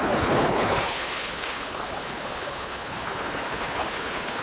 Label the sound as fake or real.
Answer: fake